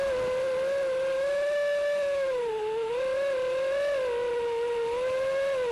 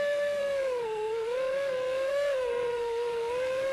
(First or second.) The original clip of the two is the first